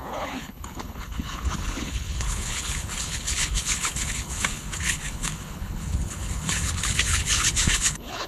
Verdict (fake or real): fake